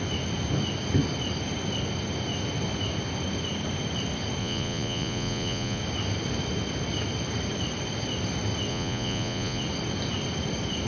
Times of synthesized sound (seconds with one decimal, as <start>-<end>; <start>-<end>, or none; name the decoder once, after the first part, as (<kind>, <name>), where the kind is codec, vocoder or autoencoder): 4.4-5.8 (vocoder, Vocos); 8.7-9.6